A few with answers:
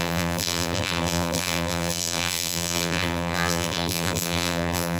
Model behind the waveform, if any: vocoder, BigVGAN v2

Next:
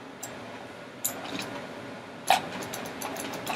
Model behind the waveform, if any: none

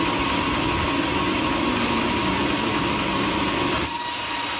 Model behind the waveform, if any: none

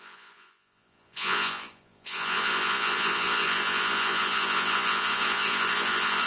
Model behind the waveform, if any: vocoder, Vocos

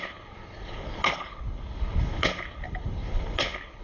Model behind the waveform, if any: codec, HILCodec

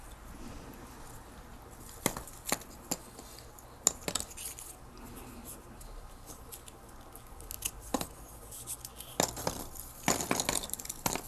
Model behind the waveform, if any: none